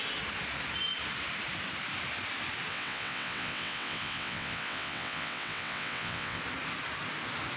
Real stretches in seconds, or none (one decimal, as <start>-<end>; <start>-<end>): 0.0-2.7; 6.4-7.6